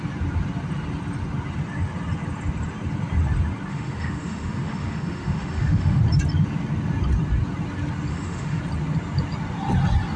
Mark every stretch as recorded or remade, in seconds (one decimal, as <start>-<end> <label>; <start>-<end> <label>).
0.0-3.7 recorded; 3.7-6.0 remade; 6.0-8.1 recorded; 8.1-8.6 remade; 8.6-10.2 recorded